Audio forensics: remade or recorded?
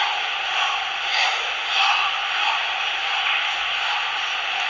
recorded